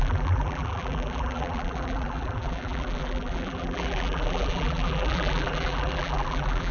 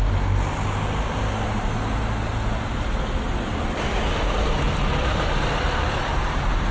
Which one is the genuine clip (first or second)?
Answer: second